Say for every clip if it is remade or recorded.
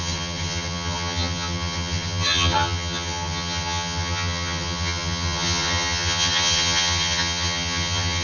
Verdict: remade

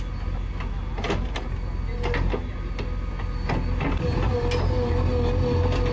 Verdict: recorded